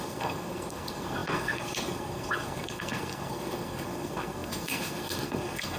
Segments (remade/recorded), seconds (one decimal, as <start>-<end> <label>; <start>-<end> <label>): 0.0-5.8 remade